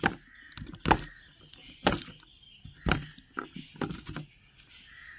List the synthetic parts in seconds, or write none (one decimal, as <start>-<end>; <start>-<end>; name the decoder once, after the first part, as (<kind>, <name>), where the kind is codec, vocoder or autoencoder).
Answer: none

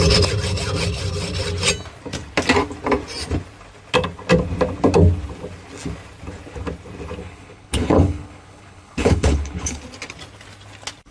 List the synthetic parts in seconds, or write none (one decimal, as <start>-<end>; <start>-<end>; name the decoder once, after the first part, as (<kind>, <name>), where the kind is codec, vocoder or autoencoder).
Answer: 7.2-9.8 (codec, HILCodec)

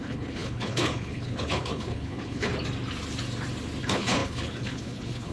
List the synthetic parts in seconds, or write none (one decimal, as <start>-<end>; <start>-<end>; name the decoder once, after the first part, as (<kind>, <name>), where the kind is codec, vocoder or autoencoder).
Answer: 0.0-2.5 (codec, HILCodec); 3.8-5.3